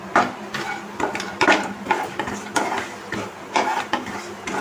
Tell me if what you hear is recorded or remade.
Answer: recorded